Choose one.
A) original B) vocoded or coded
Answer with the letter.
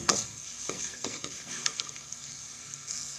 B